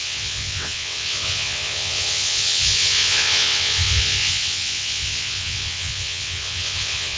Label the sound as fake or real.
fake